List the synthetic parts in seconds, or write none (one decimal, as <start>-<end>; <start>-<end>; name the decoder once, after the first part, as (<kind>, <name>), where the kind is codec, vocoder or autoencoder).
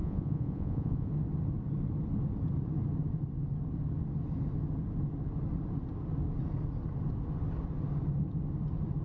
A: 0.0-1.1 (vocoder, Vocos)